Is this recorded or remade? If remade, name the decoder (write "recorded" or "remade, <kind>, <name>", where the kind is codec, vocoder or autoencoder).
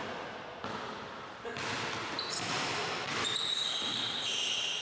remade, vocoder, BigVGAN v2